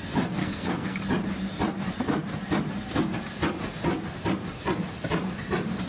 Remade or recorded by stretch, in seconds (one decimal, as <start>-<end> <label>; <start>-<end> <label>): 0.0-0.4 recorded; 0.4-1.0 remade; 1.0-5.9 recorded